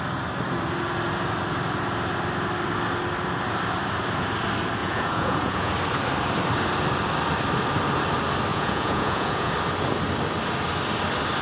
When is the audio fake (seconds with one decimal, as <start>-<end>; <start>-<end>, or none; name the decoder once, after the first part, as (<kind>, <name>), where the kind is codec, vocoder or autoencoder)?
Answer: 4.8-5.7 (vocoder, Vocos); 8.5-9.5